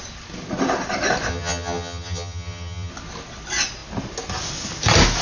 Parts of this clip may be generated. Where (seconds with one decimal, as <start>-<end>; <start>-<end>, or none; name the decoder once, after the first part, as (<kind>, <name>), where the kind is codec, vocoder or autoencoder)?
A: 1.3-2.9 (vocoder, HiFi-GAN)